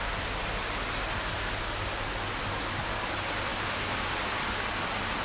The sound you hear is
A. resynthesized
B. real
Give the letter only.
B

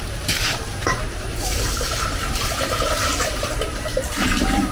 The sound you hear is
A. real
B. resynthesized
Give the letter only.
B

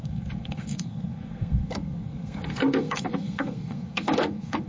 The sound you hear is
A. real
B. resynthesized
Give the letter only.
B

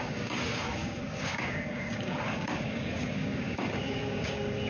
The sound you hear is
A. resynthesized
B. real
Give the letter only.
A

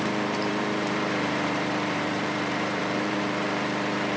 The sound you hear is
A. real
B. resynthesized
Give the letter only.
B